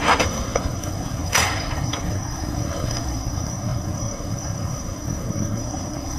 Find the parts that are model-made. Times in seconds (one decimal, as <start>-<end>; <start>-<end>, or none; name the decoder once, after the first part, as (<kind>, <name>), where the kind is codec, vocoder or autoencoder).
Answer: 0.0-6.2 (codec, SNAC)

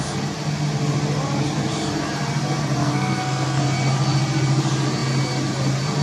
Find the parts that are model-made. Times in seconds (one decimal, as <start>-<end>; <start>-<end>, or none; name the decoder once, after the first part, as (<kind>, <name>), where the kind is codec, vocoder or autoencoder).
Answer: 2.8-3.6 (codec, SNAC)

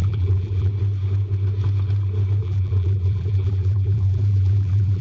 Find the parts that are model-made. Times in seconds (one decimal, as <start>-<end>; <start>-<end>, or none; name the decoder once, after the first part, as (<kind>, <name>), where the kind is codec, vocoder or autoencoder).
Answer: 0.0-0.7 (vocoder, BigVGAN v2); 2.4-5.0

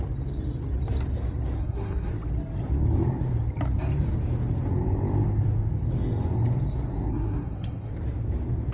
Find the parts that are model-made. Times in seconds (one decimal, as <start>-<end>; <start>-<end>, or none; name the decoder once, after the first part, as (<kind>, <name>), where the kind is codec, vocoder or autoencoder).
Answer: 1.6-2.1 (codec, SNAC); 7.1-7.9

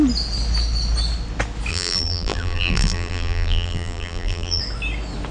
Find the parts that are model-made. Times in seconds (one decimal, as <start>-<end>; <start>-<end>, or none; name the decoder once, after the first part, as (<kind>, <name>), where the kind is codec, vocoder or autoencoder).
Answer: 1.7-4.6 (vocoder, BigVGAN v2)

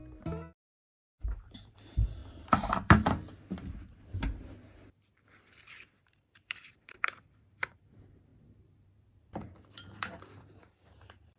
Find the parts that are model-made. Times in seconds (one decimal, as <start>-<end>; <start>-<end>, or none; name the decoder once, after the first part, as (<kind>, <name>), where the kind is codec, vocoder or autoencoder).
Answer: 0.0-2.2 (vocoder, BigVGAN v2); 6.0-11.4

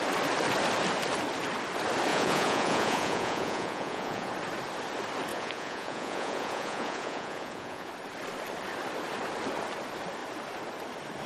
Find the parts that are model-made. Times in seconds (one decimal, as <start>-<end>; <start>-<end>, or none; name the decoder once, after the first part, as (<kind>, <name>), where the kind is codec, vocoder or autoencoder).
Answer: 2.1-4.3 (vocoder, Vocos); 5.3-7.9